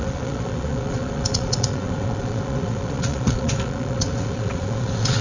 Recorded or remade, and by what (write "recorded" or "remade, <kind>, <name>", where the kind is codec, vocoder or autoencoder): remade, vocoder, Vocos